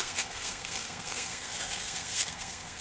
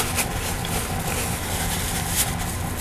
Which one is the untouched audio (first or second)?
second